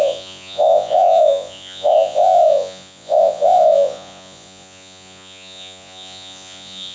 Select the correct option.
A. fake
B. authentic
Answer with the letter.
A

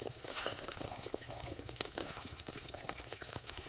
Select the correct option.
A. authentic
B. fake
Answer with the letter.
B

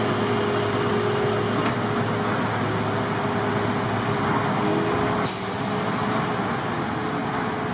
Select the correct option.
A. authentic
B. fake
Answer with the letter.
A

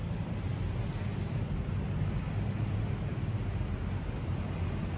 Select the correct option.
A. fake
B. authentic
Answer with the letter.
B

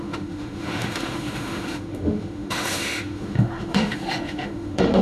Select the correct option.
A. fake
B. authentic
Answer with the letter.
A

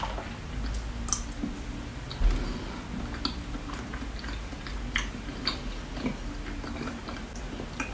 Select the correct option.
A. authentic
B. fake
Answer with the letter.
A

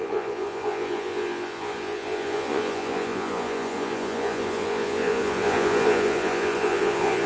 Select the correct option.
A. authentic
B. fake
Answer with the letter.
B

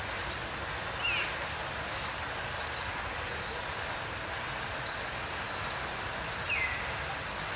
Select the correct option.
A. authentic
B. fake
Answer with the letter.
A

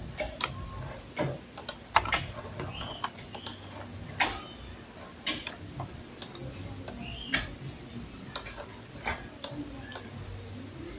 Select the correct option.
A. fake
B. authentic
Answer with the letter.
B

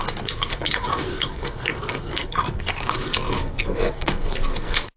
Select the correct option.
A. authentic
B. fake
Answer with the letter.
B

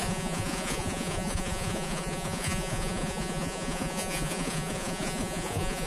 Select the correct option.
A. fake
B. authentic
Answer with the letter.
A